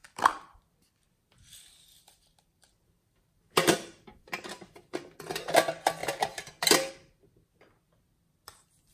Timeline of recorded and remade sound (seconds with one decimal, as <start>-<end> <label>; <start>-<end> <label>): 0.0-5.3 remade; 5.3-6.0 recorded; 6.0-6.9 remade; 6.9-8.9 recorded